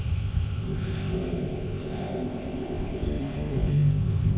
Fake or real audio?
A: fake